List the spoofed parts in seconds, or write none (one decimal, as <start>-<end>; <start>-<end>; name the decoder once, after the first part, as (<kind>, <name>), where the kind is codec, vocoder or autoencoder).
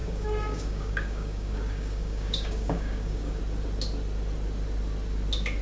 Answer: 0.0-3.4 (codec, DAC)